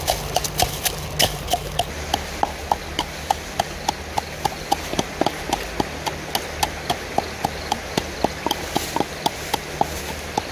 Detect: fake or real real